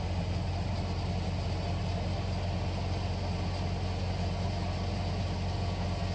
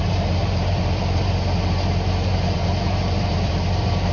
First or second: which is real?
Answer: first